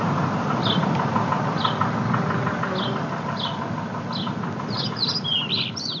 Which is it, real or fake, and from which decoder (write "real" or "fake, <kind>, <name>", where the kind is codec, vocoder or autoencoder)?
real